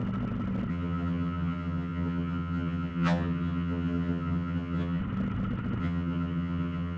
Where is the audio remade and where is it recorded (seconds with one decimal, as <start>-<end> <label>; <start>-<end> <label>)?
0.0-0.7 recorded; 0.7-5.0 remade; 5.0-5.8 recorded; 5.8-7.0 remade